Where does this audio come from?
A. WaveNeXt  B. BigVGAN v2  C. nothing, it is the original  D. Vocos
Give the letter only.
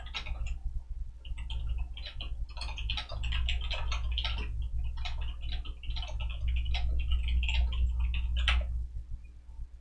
C